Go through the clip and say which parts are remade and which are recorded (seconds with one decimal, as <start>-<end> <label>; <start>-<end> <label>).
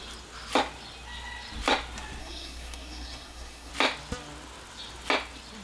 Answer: 0.0-2.2 recorded; 2.2-3.7 remade; 3.7-5.6 recorded